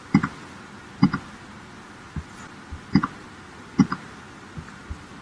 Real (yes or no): yes